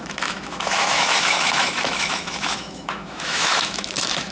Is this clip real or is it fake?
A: fake